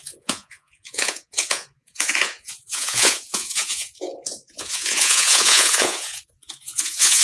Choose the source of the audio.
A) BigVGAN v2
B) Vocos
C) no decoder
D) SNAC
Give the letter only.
B